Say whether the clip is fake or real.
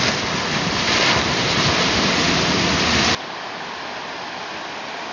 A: real